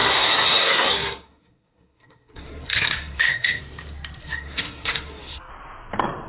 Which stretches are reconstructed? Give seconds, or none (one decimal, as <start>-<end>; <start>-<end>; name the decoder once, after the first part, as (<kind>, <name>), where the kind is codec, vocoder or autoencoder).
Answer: 0.0-3.6 (codec, SNAC); 4.2-5.5